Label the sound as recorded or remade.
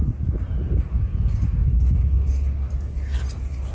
recorded